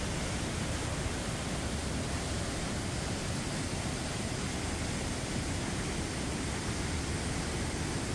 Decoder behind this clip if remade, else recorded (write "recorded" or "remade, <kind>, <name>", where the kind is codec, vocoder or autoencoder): recorded